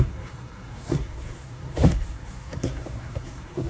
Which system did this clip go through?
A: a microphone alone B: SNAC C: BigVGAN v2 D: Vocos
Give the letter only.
B